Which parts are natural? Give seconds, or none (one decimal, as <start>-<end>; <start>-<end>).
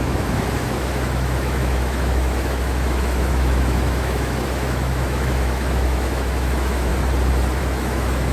6.9-7.6